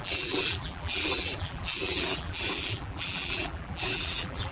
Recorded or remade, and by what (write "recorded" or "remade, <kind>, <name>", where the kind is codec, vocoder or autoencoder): remade, vocoder, BigVGAN v2